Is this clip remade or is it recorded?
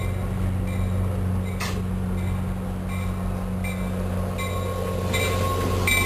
recorded